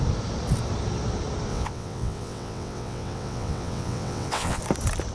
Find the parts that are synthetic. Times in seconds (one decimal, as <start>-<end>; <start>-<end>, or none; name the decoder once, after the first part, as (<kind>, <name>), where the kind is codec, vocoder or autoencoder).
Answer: 1.5-4.6 (vocoder, WaveNeXt)